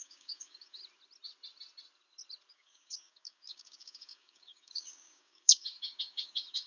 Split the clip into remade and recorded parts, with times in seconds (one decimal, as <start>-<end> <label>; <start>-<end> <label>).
0.0-0.8 remade; 0.8-2.5 recorded; 2.5-6.7 remade